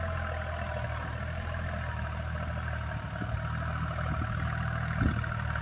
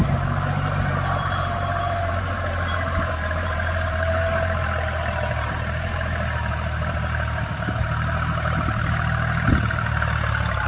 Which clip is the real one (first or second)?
first